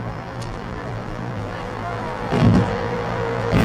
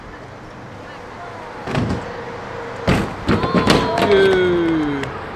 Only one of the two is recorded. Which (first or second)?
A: second